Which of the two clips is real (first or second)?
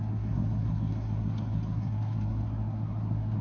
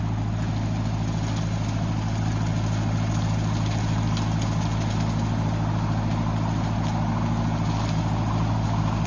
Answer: second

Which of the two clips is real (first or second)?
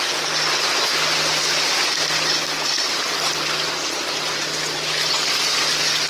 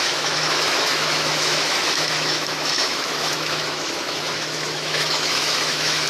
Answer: first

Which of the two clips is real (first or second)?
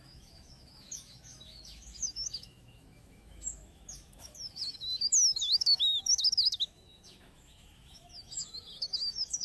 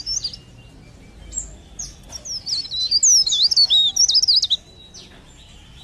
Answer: second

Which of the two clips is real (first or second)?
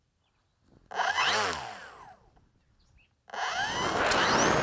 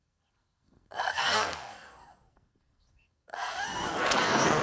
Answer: first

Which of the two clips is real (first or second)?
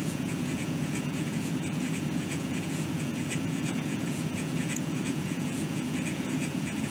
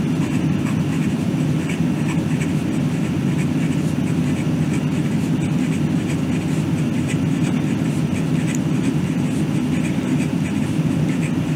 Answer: second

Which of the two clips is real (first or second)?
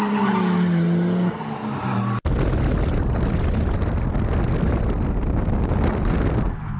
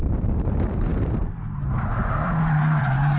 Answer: first